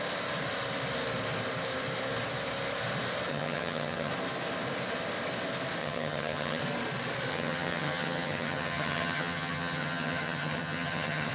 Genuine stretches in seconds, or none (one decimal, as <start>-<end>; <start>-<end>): 0.0-3.3; 4.1-5.8; 6.6-7.3